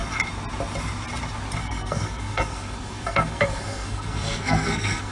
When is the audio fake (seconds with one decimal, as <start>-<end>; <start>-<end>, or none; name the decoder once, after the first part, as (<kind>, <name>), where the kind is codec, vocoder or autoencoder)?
1.6-5.1 (codec, SNAC)